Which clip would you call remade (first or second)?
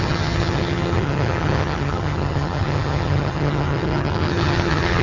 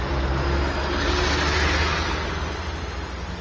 first